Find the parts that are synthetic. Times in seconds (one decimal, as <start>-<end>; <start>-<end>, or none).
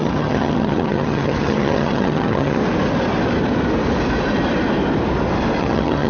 0.0-2.6; 5.6-6.1